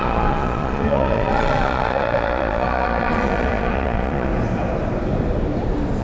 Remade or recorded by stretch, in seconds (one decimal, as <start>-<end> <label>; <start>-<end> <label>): 0.0-4.3 remade; 4.3-6.0 recorded